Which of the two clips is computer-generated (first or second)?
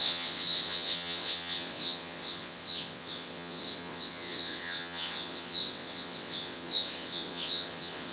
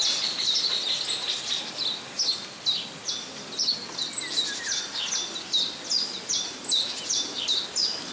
first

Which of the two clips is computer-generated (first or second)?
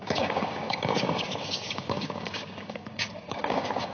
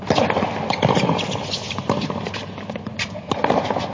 first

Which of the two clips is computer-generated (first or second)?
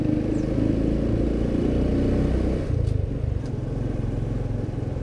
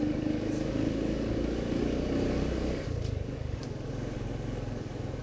second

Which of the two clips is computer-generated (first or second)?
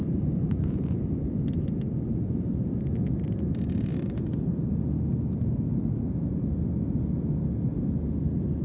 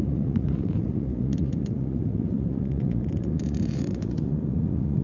second